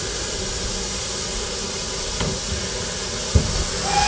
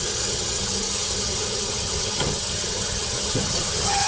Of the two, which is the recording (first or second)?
first